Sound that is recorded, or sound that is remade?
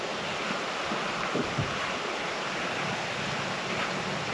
recorded